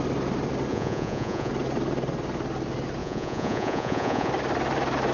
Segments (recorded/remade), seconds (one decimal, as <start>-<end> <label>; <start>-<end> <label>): 0.0-0.7 recorded; 0.7-1.5 remade; 1.5-3.0 recorded; 3.0-4.3 remade; 4.3-5.1 recorded